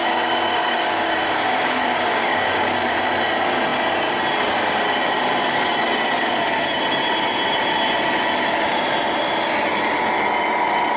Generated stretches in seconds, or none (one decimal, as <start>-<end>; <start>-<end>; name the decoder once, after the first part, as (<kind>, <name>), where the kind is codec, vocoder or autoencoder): 0.0-2.8 (codec, DAC)

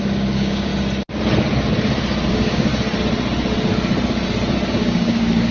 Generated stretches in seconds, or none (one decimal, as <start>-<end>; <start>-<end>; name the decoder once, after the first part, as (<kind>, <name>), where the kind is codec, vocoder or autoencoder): 0.0-0.7 (codec, DAC); 2.3-2.7; 4.7-5.5

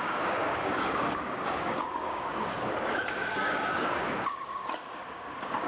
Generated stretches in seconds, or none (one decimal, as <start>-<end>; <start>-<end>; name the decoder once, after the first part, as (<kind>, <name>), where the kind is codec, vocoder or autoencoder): 0.0-5.7 (codec, DAC)

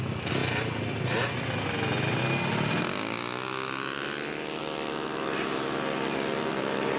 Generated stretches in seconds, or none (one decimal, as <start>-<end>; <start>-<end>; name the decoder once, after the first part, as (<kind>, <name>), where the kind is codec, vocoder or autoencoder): none

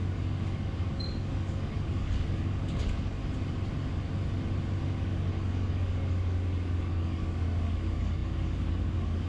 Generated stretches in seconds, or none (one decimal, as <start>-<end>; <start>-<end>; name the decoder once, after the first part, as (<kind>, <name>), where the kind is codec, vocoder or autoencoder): 0.0-3.2 (codec, DAC); 4.8-9.3

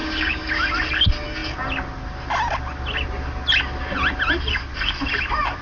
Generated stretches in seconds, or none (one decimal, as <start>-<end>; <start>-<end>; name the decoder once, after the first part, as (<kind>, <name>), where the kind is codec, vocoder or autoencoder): 0.0-0.5 (codec, DAC)

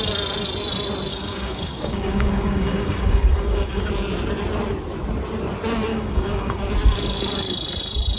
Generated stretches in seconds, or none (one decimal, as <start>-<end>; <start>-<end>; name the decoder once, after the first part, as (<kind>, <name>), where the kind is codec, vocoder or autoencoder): 1.1-3.9 (codec, DAC); 5.9-6.6